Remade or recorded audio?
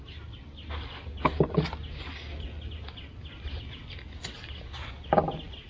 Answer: recorded